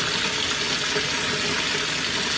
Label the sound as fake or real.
real